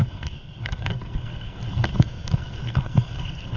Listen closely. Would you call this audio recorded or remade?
remade